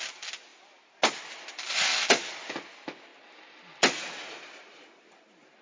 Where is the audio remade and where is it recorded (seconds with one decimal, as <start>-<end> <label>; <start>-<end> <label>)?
0.0-5.6 recorded